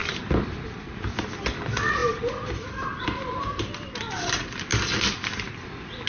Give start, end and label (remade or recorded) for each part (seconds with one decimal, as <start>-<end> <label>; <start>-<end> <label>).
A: 0.0-2.0 recorded; 2.0-3.6 remade; 3.6-4.7 recorded; 4.7-5.5 remade; 5.5-6.1 recorded